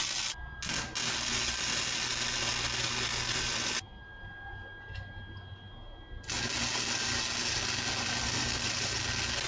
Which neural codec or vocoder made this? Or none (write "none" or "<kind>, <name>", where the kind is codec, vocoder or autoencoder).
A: none